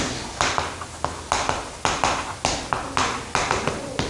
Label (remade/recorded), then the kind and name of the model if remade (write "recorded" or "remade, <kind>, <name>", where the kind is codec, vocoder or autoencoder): recorded